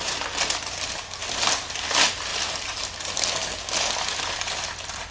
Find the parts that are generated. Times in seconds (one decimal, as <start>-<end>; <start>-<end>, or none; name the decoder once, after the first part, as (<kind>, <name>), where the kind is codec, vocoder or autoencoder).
none